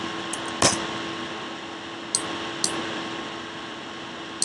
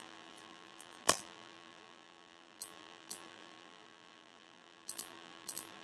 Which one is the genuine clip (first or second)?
first